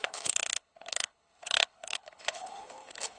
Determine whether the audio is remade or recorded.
remade